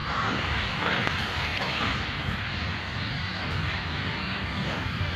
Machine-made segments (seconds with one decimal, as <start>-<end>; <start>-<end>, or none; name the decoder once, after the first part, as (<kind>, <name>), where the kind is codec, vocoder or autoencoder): 0.0-5.2 (codec, DAC)